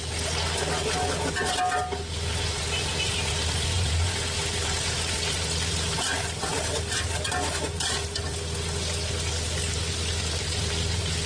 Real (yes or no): yes